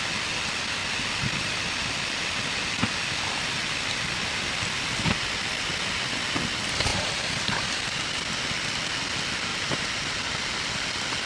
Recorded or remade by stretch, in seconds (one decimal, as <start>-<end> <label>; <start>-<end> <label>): 0.0-6.9 recorded; 6.9-8.1 remade; 8.1-9.5 recorded; 9.5-10.1 remade; 10.1-11.3 recorded